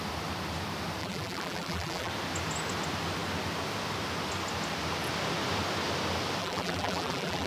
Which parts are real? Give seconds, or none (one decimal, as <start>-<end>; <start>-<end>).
0.0-1.0; 2.1-6.4